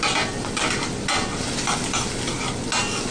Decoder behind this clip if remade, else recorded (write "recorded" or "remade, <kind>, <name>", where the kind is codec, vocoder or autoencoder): recorded